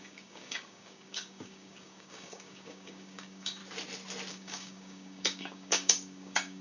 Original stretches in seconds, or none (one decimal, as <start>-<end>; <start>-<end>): 3.6-4.3